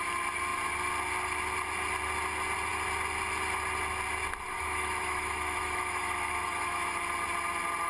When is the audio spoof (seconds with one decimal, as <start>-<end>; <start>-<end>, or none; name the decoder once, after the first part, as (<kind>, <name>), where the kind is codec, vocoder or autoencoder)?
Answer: 4.5-7.0 (autoencoder, DAC-VAE)